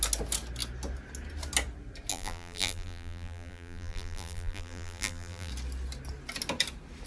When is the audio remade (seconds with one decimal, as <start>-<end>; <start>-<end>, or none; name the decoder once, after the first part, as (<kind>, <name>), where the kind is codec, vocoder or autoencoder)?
2.1-5.5 (vocoder, BigVGAN v2)